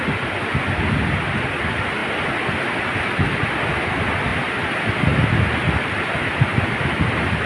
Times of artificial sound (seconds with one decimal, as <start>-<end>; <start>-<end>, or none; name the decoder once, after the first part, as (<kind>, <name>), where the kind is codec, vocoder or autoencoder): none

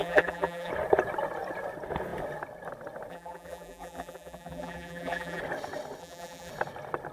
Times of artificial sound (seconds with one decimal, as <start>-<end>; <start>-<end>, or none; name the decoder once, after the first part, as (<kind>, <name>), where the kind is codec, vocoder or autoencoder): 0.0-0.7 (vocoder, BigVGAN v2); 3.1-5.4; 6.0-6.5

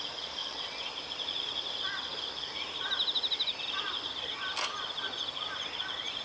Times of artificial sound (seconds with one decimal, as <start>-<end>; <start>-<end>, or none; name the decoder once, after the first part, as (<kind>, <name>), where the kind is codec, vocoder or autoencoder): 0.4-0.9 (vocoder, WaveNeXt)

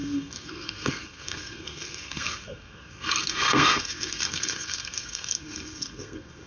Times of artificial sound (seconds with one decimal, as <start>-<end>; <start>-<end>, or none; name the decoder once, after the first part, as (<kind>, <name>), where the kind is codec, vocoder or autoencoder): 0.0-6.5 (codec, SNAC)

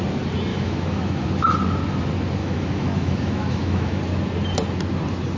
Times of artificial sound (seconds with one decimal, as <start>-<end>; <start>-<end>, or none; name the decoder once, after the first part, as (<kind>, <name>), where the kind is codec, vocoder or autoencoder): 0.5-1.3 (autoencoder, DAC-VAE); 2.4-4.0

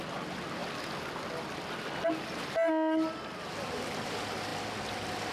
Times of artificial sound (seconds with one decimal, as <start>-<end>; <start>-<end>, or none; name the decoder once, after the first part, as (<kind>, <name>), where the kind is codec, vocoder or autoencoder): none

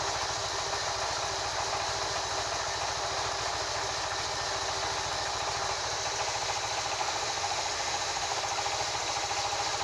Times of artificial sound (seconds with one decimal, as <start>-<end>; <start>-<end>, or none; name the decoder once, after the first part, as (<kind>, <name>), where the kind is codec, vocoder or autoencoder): 7.0-8.4 (autoencoder, DAC-VAE)